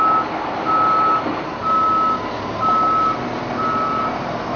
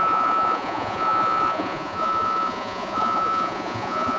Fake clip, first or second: second